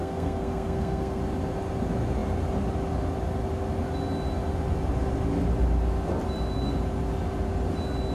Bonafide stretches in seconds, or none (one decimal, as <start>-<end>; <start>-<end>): 1.2-8.1